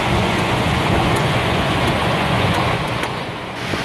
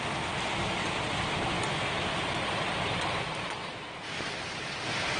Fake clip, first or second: first